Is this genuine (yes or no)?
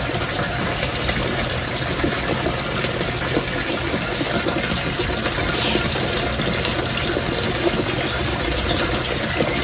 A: yes